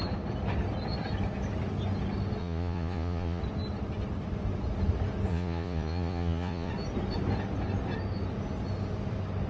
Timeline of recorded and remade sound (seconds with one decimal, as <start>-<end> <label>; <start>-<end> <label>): 0.0-2.4 recorded; 2.4-3.4 remade; 3.4-5.3 recorded; 5.3-6.7 remade; 6.7-9.5 recorded